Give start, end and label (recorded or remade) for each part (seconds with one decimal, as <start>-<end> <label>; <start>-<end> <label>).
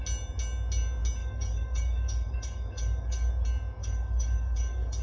0.0-1.2 recorded; 1.2-3.3 remade; 3.3-3.8 recorded; 3.8-5.0 remade